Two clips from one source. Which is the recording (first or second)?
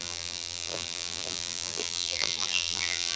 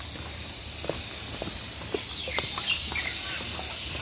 second